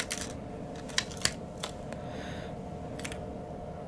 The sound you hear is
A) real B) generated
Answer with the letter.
A